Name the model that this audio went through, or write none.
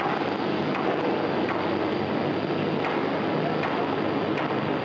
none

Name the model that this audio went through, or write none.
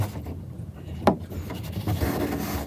none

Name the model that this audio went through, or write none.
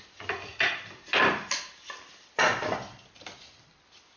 none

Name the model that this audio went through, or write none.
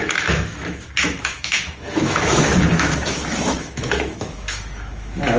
autoencoder, DAC-VAE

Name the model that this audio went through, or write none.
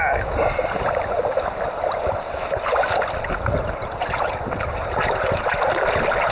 none